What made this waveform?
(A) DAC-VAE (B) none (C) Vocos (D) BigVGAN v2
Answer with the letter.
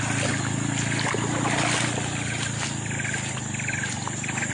B